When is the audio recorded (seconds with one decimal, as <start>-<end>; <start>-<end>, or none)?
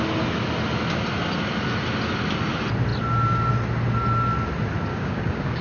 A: 0.0-4.9